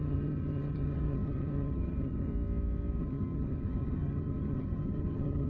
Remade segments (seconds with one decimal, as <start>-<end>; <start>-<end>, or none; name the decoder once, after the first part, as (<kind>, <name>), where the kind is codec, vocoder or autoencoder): 0.0-2.3 (vocoder, HiFi-GAN); 3.0-5.5